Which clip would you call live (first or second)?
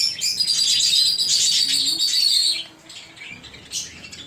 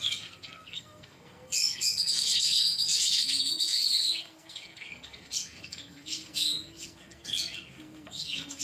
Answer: first